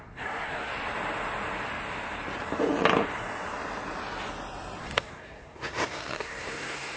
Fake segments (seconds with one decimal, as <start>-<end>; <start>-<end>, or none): 0.0-0.7; 4.8-7.0